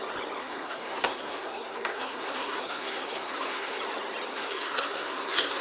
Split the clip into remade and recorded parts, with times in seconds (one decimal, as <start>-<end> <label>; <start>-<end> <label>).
0.0-0.4 recorded; 0.4-3.8 remade; 3.8-4.3 recorded; 4.3-5.6 remade